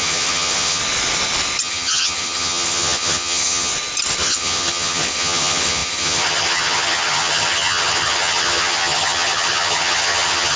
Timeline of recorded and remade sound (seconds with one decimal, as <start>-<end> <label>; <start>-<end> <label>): 0.0-0.8 remade; 0.8-1.6 recorded; 1.6-3.7 remade; 3.7-4.2 recorded; 4.2-10.6 remade